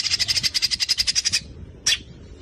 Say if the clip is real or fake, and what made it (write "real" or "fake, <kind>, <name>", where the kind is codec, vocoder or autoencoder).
real